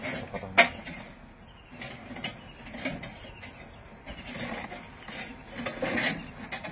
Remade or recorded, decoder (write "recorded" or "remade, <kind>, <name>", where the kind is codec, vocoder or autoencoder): recorded